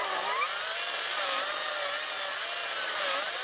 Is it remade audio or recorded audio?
recorded